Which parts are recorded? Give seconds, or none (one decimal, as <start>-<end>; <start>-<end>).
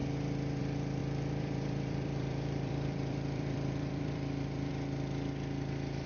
0.0-1.0; 4.7-6.1